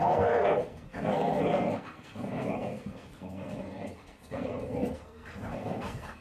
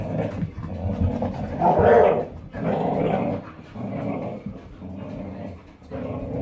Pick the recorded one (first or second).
second